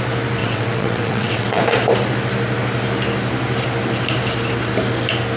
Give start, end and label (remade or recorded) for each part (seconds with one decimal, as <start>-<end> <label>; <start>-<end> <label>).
0.0-0.4 recorded; 0.4-1.6 remade; 1.6-5.4 recorded